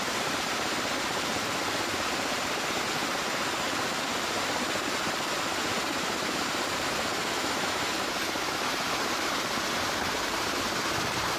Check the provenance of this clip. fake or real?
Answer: fake